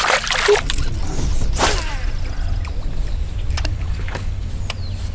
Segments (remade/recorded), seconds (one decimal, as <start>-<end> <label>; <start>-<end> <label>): 0.0-3.7 recorded; 3.7-4.5 remade; 4.5-5.1 recorded